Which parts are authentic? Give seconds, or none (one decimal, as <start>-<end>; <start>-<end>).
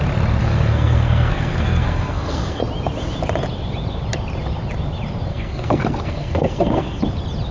0.0-0.4; 2.6-5.3; 7.0-7.5